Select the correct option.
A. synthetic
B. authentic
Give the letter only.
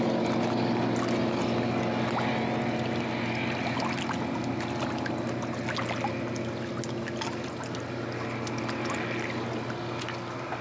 B